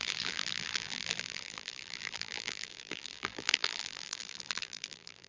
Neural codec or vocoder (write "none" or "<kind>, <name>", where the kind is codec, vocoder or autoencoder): vocoder, BigVGAN v2